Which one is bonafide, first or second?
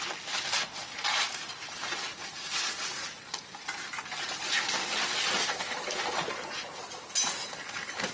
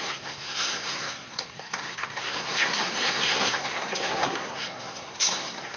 first